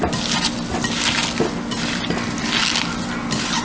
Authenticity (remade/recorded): recorded